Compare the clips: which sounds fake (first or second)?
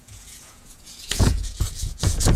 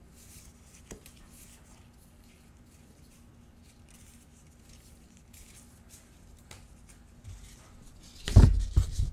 first